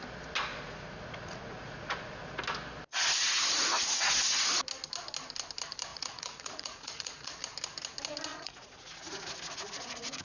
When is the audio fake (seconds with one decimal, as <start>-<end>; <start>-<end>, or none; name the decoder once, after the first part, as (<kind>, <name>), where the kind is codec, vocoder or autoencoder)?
0.5-2.4 (vocoder, Vocos); 5.9-7.4; 8.3-10.2